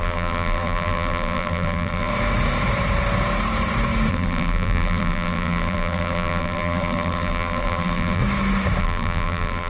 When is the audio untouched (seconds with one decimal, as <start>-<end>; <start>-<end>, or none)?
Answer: 2.1-4.1; 8.2-8.8